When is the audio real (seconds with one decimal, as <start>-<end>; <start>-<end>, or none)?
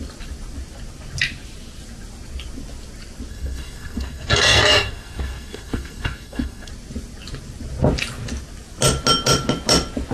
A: 0.0-3.3; 6.7-10.1